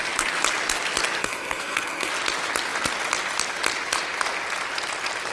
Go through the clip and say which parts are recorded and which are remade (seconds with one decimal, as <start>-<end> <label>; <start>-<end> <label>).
0.0-1.2 recorded; 1.2-2.1 remade; 2.1-5.3 recorded